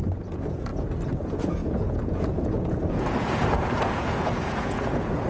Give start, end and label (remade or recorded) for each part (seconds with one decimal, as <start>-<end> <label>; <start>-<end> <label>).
0.0-0.7 remade; 0.7-1.2 recorded; 1.2-5.3 remade